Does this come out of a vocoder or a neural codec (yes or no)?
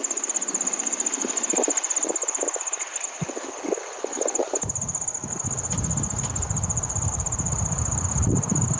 yes